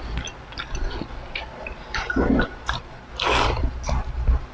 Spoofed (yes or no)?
no